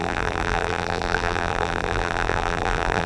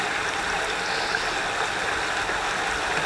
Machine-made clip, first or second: first